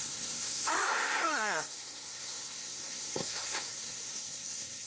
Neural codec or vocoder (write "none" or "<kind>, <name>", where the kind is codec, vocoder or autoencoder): codec, SNAC